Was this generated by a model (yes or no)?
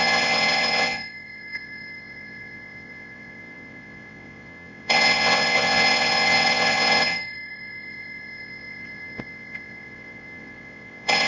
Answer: yes